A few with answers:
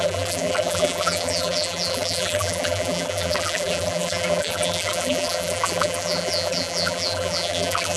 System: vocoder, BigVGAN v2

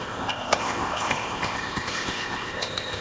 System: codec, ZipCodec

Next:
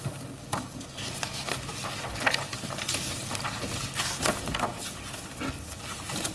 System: none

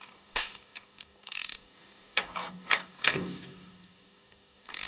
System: codec, DAC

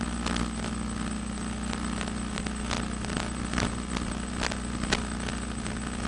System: none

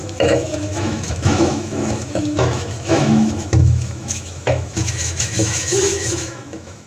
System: autoencoder, DAC-VAE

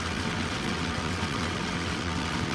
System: vocoder, WaveNeXt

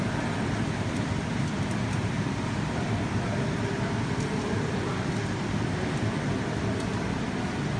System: none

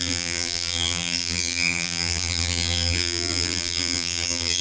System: vocoder, BigVGAN v2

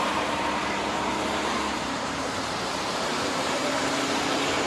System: vocoder, BigVGAN v2